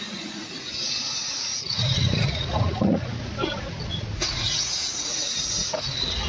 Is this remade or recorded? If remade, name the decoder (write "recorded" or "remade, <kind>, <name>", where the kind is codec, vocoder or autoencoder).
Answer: remade, vocoder, Vocos